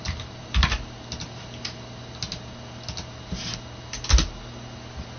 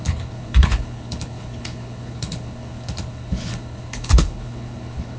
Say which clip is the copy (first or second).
second